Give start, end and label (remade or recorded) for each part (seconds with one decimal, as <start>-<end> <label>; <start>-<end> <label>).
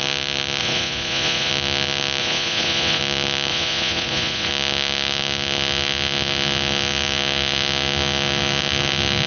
0.0-0.6 recorded; 0.6-1.5 remade; 1.5-2.2 recorded; 2.2-3.0 remade; 3.0-3.5 recorded; 3.5-4.5 remade; 4.5-9.3 recorded